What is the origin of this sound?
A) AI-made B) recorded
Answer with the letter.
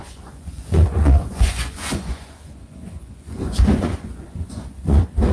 A